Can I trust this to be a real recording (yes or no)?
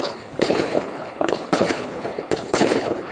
no